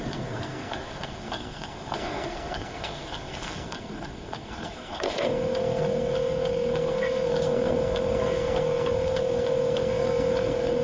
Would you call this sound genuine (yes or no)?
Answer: no